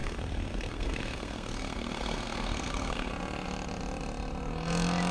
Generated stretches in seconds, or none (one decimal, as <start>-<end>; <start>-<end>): 0.0-3.1